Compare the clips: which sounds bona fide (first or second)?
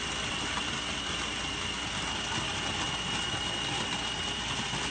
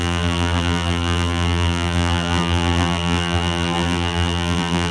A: first